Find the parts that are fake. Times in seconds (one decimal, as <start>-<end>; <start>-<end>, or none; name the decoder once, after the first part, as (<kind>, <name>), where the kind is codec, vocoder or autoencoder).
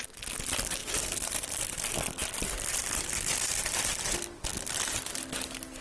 0.8-1.6 (vocoder, BigVGAN v2)